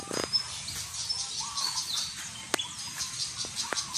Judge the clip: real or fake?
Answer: real